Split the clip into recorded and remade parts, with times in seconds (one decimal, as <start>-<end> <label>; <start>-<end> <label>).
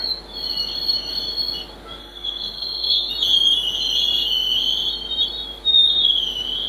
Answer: 0.0-2.0 recorded; 2.0-3.1 remade; 3.1-6.7 recorded